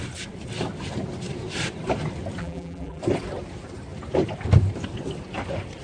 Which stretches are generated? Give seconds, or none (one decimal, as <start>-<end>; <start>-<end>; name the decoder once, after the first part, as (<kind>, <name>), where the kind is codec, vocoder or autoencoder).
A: 2.4-3.0 (vocoder, BigVGAN v2)